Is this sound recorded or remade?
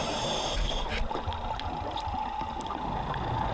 recorded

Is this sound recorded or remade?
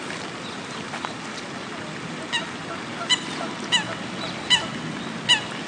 recorded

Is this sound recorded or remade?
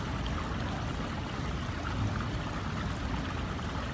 recorded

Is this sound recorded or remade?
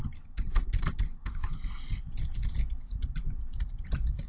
recorded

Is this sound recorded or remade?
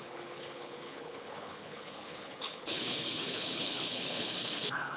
remade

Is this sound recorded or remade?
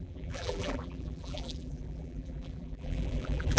remade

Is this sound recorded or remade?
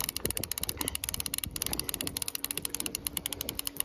recorded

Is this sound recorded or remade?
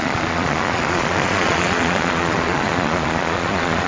remade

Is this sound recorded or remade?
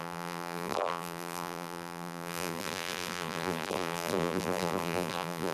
remade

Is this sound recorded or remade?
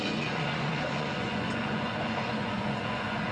remade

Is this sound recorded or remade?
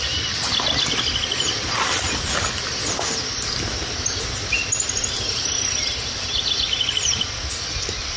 recorded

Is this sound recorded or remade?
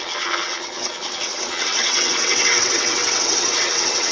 remade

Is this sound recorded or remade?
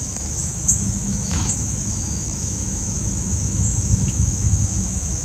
remade